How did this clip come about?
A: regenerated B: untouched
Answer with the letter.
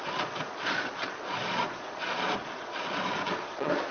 A